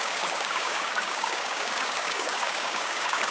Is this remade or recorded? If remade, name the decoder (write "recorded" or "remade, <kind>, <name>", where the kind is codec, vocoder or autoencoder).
remade, codec, DAC